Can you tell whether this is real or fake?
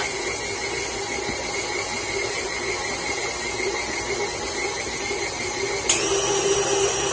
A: real